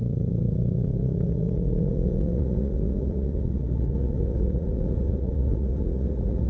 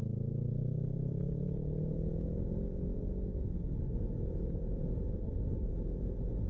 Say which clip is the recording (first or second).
second